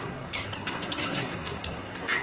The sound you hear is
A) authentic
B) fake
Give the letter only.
B